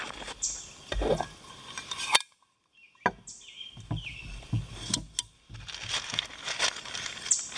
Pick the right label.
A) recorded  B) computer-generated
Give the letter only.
A